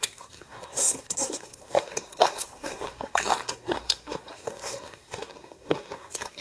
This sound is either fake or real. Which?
fake